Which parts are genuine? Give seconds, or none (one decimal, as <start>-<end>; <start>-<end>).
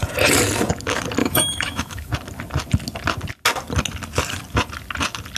0.0-1.2; 2.1-5.4